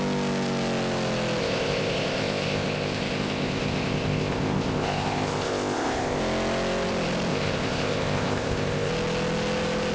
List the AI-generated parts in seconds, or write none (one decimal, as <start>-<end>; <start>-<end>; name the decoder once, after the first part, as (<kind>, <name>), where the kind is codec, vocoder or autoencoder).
1.4-6.2 (codec, ZipCodec); 7.3-8.9

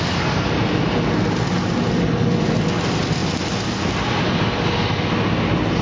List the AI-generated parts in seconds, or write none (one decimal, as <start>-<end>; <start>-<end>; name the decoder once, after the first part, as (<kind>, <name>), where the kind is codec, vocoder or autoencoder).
none

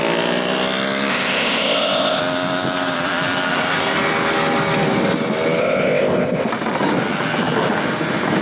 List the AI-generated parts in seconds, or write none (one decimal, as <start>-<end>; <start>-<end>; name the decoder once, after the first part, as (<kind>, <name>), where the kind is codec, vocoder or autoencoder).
1.1-2.2 (codec, ZipCodec); 5.6-6.5

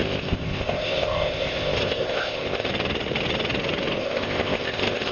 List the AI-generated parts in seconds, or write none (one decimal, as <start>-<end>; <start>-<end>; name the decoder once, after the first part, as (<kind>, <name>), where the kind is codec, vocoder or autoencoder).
0.0-2.7 (codec, ZipCodec); 4.0-5.1